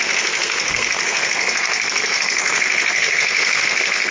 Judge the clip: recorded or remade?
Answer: remade